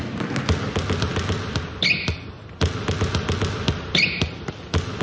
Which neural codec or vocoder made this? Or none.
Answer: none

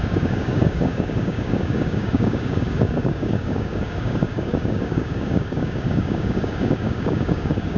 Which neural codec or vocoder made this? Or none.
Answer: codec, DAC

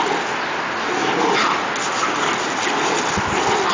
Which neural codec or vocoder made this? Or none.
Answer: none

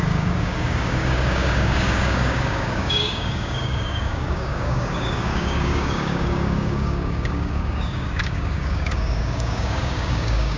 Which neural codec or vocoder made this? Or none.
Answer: codec, DAC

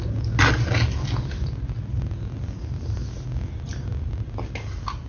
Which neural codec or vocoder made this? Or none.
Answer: none